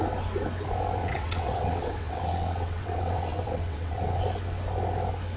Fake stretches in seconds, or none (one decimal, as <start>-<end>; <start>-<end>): 1.0-4.2